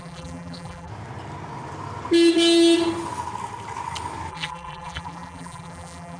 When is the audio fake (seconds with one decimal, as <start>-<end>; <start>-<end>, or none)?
0.0-0.9; 4.3-6.2